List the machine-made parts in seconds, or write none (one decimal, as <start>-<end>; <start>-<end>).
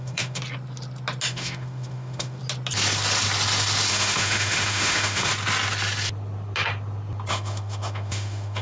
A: 0.0-0.4; 1.3-2.4; 3.9-5.3; 7.3-8.6